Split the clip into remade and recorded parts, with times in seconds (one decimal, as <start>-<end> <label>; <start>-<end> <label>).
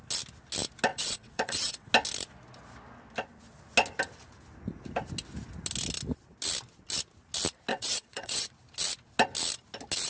0.0-0.9 recorded; 0.9-1.9 remade; 1.9-7.7 recorded; 7.7-8.5 remade; 8.5-10.1 recorded